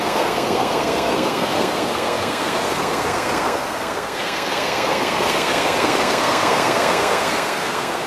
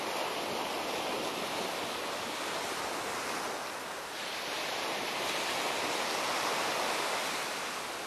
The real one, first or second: second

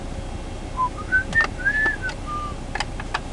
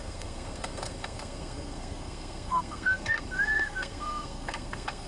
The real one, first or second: first